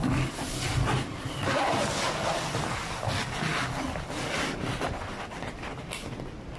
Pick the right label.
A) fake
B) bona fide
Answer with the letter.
B